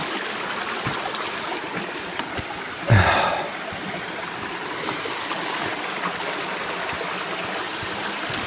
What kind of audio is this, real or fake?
real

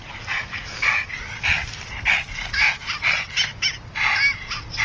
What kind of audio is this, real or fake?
real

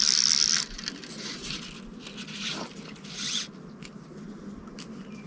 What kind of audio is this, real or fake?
real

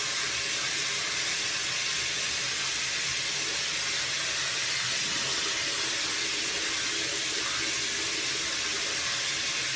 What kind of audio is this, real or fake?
real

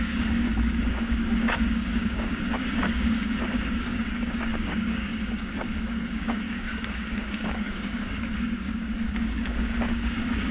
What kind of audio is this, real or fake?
fake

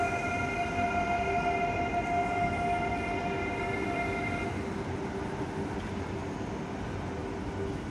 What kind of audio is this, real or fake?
real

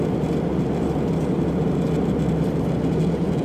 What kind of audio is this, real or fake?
real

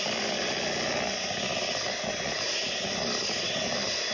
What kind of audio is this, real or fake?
real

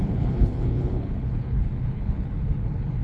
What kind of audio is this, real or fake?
fake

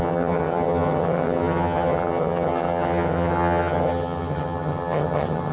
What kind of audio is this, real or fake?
fake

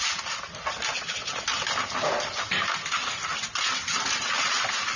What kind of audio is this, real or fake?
real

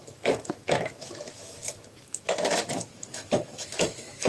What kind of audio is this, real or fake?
fake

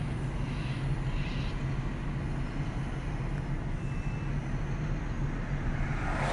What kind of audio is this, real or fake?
real